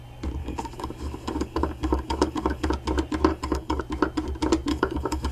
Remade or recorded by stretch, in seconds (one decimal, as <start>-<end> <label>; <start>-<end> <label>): 0.0-0.4 recorded; 0.4-2.7 remade; 2.7-3.3 recorded; 3.3-3.8 remade; 3.8-4.7 recorded; 4.7-5.3 remade

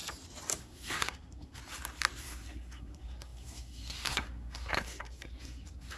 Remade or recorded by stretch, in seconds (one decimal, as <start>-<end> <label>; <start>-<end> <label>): 0.0-0.6 recorded; 0.6-1.6 remade; 1.6-2.2 recorded; 2.2-6.0 remade

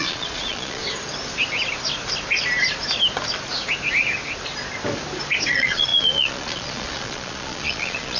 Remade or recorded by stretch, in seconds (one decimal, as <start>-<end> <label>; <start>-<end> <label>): 0.0-0.8 remade; 0.8-5.5 recorded; 5.5-8.2 remade

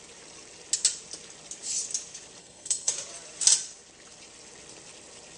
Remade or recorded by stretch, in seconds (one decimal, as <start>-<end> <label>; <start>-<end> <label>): 0.0-2.4 recorded; 2.4-2.9 remade; 2.9-5.4 recorded

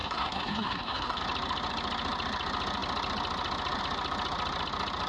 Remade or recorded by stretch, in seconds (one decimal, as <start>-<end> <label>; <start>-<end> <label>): 0.0-1.2 remade; 1.2-5.1 recorded

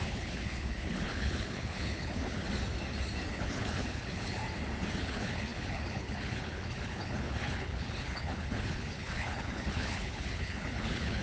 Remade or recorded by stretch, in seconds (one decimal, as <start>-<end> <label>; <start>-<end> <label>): 0.0-2.4 remade; 2.4-3.3 recorded; 3.3-4.4 remade; 4.4-5.0 recorded; 5.0-11.2 remade

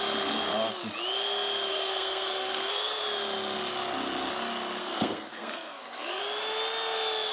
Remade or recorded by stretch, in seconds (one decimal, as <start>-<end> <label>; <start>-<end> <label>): 0.0-1.7 recorded; 1.7-3.0 remade; 3.0-4.8 recorded; 4.8-6.2 remade; 6.2-7.3 recorded

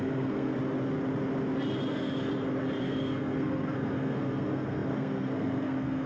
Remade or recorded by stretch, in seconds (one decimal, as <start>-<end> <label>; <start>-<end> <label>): 0.0-0.5 remade; 0.5-1.9 recorded; 1.9-2.3 remade; 2.3-2.8 recorded; 2.8-6.1 remade